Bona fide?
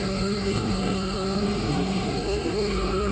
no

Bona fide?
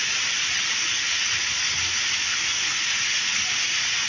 yes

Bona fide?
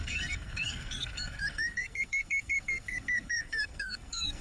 no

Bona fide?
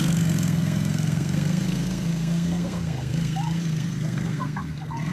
no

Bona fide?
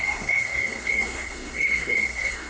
no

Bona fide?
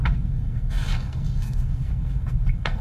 no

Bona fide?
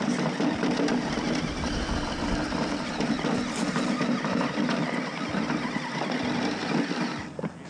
yes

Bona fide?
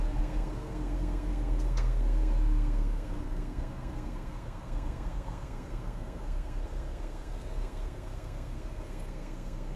no